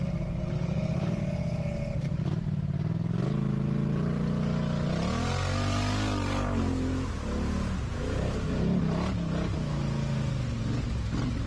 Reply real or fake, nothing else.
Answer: real